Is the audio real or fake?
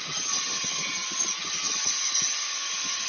fake